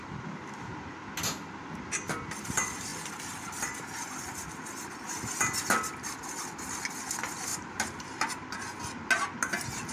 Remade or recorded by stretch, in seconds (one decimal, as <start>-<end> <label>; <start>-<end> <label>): 0.0-9.9 recorded